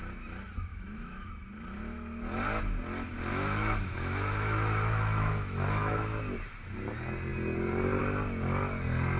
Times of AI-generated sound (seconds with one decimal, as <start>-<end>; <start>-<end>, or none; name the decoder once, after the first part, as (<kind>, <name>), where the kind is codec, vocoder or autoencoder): 0.7-1.3 (autoencoder, DAC-VAE); 3.3-6.2